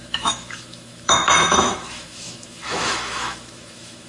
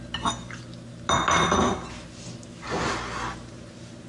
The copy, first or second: first